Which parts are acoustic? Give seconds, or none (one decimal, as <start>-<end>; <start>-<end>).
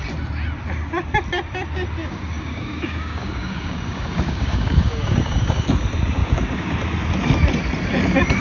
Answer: 0.0-2.0; 5.5-6.2; 6.7-8.4